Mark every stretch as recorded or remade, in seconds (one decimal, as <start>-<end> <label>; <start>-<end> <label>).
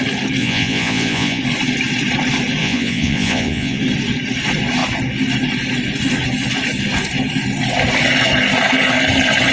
0.0-0.4 recorded; 0.4-1.4 remade; 1.4-2.6 recorded; 2.6-3.8 remade; 3.8-9.5 recorded